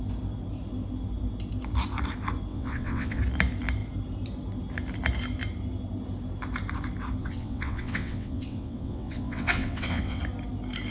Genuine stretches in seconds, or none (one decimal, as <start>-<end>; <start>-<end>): 0.0-2.5; 3.2-7.2; 10.2-10.9